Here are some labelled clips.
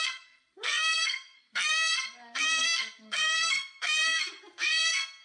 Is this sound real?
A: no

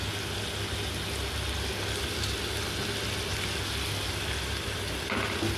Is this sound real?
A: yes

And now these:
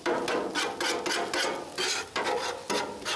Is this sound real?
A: yes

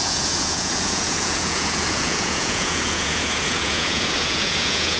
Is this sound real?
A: no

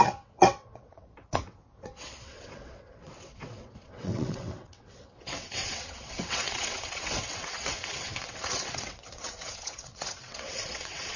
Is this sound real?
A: no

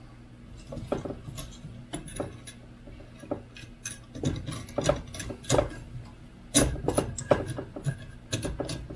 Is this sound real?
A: yes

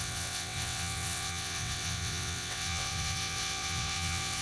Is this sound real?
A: no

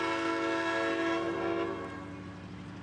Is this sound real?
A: yes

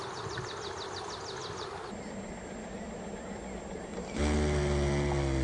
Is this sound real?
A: yes